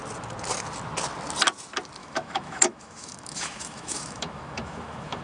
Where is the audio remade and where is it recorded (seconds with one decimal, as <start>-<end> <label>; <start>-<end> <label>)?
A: 0.0-2.0 recorded; 2.0-5.2 remade